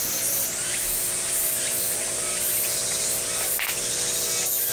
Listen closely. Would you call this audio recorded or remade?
recorded